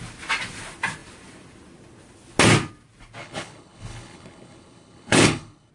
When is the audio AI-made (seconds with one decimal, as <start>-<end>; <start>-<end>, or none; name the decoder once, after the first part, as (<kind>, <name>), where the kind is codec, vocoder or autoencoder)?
3.2-5.7 (codec, HILCodec)